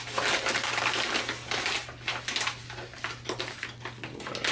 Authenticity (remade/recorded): recorded